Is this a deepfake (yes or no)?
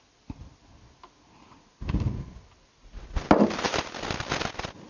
no